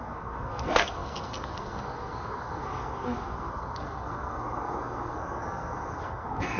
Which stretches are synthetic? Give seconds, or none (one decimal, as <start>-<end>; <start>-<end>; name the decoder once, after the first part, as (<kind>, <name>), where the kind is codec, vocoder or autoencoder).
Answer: 0.0-6.6 (codec, SNAC)